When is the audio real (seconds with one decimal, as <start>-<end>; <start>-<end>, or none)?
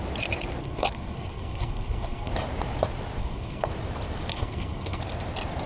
0.0-0.6; 2.3-3.2; 3.7-4.3; 5.0-5.7